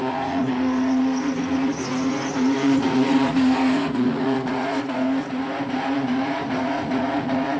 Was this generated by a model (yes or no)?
yes